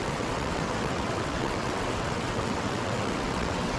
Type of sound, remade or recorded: remade